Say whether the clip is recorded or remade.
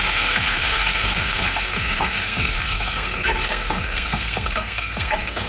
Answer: remade